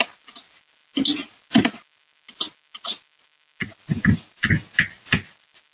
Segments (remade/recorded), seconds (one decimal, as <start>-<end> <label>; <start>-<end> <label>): 0.0-3.9 recorded; 3.9-4.5 remade; 4.5-5.7 recorded